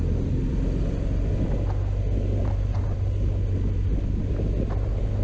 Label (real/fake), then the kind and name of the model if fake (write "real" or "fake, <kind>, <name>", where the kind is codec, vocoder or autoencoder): real